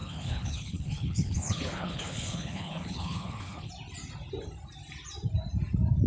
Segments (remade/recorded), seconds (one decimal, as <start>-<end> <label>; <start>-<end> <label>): 0.0-3.7 remade; 3.7-6.1 recorded